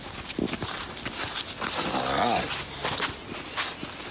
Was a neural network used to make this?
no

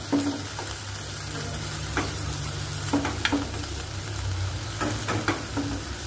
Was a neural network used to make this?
no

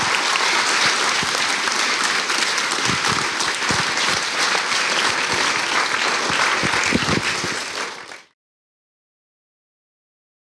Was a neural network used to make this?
no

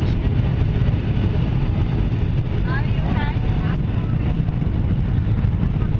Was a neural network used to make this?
yes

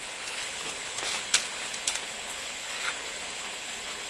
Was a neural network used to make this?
yes